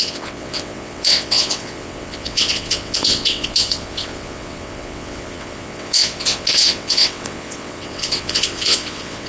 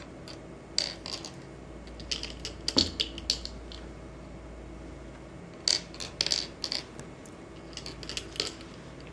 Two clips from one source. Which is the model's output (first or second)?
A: first